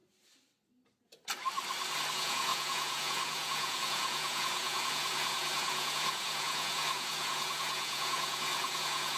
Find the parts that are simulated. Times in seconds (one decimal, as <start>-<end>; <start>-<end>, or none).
2.1-9.2